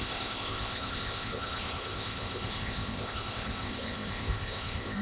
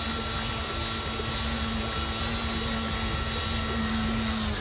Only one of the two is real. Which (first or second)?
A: second